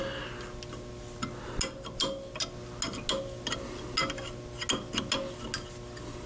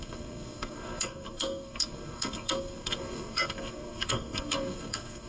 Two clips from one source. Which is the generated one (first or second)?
second